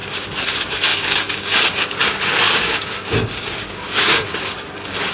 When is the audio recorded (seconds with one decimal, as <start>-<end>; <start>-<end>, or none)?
none